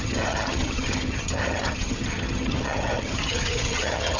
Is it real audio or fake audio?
fake